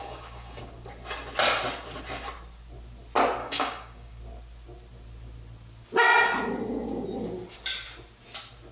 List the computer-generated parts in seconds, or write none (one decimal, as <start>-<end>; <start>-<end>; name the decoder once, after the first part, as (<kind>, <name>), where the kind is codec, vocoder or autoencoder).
0.0-0.6 (codec, DAC); 3.4-4.2